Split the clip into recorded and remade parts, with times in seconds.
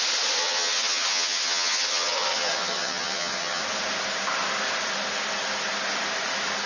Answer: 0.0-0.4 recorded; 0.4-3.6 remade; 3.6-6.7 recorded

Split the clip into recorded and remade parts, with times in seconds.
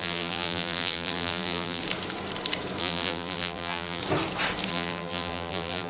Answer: 0.0-1.8 remade; 1.8-2.8 recorded; 2.8-4.0 remade; 4.0-4.7 recorded; 4.7-5.9 remade